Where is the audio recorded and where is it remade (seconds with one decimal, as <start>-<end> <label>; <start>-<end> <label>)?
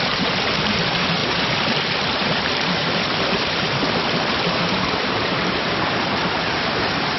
0.0-7.2 remade